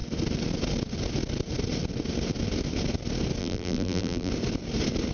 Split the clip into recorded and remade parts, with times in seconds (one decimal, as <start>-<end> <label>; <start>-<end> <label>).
0.0-3.4 recorded; 3.4-4.3 remade; 4.3-5.1 recorded